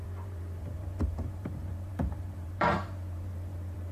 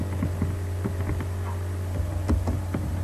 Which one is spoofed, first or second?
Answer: first